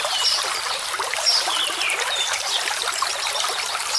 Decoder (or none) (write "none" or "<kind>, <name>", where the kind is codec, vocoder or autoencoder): vocoder, BigVGAN v2